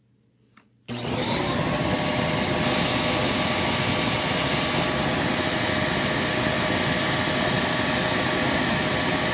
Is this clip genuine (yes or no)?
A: yes